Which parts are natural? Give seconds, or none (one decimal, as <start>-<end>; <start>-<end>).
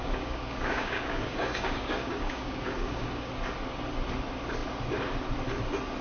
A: 3.3-6.0